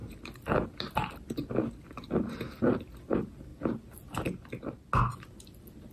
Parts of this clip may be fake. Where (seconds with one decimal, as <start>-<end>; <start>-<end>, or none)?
none